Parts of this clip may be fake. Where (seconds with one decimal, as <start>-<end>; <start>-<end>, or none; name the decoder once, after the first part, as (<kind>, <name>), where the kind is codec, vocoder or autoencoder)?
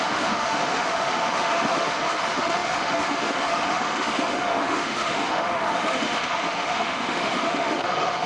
0.0-8.3 (autoencoder, DAC-VAE)